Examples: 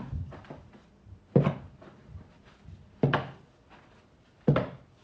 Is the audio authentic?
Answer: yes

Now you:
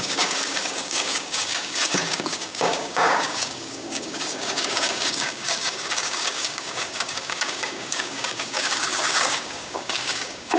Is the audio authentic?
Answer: no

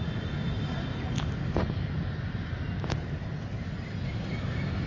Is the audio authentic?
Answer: yes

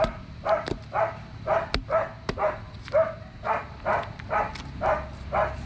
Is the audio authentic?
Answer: yes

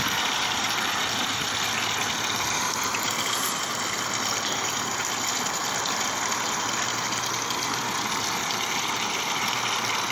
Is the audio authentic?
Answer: yes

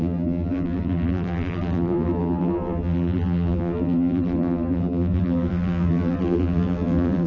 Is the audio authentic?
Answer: no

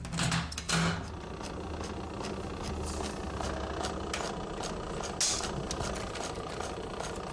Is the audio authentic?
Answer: yes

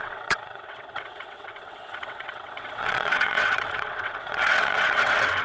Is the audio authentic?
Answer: no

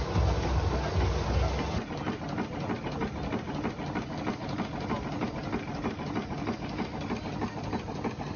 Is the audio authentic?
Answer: yes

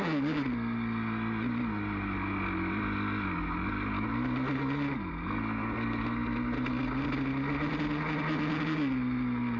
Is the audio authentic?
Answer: yes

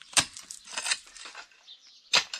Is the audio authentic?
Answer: no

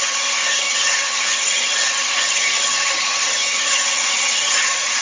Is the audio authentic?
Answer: no